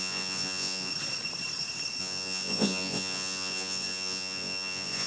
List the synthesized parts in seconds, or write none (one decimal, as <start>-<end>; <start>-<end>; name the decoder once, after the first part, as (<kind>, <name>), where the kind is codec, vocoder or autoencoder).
0.0-0.9 (vocoder, Vocos); 2.0-5.1